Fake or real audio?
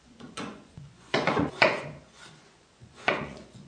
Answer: fake